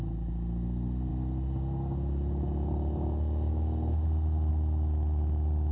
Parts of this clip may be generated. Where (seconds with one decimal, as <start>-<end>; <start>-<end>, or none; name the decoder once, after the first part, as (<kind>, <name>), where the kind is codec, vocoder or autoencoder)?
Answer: none